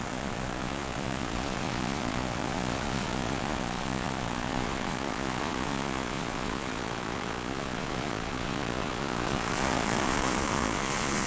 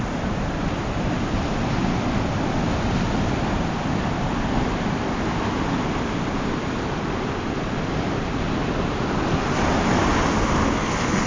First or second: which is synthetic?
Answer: first